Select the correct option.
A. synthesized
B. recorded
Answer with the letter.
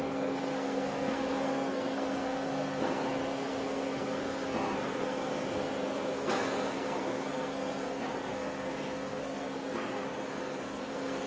A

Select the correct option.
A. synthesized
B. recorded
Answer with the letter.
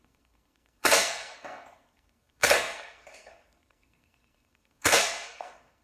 A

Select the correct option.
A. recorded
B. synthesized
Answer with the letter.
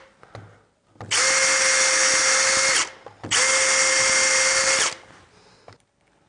A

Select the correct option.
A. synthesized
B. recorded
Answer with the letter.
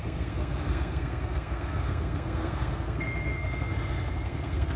A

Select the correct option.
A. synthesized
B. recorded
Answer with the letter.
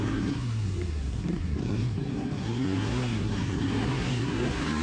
A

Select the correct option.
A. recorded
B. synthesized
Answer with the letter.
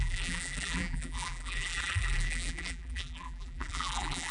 B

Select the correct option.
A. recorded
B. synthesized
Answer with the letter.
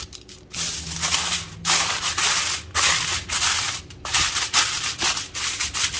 A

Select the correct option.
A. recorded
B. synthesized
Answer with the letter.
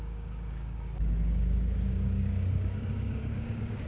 B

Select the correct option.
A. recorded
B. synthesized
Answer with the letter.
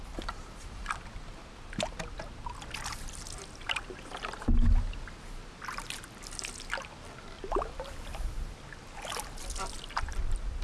A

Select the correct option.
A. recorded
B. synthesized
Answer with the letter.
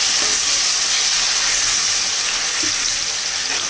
A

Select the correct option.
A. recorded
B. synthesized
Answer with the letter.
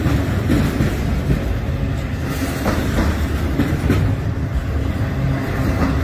A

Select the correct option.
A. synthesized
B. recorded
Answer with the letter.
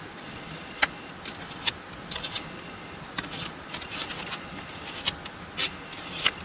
B